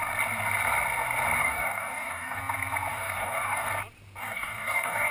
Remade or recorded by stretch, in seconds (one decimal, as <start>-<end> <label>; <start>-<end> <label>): 0.0-1.4 recorded; 1.4-2.4 remade; 2.4-2.9 recorded; 2.9-3.7 remade; 3.7-4.2 recorded; 4.2-5.1 remade